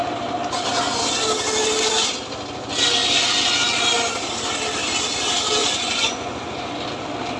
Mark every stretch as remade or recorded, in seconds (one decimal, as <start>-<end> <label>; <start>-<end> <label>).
0.0-5.6 recorded; 5.6-6.8 remade; 6.8-7.4 recorded